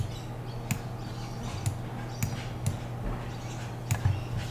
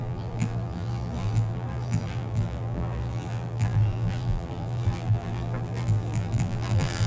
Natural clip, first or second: first